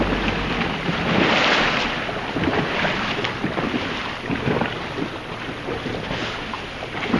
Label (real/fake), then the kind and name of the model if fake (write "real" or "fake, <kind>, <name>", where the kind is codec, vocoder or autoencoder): real